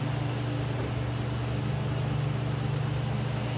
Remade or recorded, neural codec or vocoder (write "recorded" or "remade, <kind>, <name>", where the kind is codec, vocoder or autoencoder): recorded